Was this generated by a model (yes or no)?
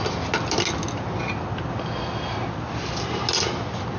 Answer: no